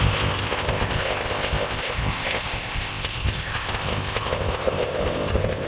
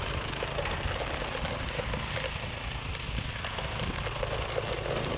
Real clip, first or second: second